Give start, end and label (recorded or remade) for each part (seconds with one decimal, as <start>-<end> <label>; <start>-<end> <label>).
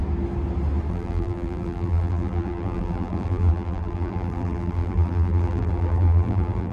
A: 0.0-0.9 recorded; 0.9-6.7 remade